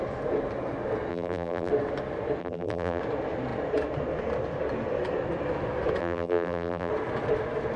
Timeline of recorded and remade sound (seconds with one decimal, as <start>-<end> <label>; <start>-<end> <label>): 0.0-1.1 recorded; 1.1-1.7 remade; 1.7-2.4 recorded; 2.4-3.0 remade; 3.0-6.0 recorded; 6.0-6.9 remade; 6.9-7.8 recorded